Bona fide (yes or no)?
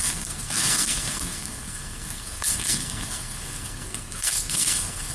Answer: no